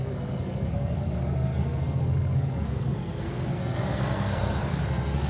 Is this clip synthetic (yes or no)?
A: yes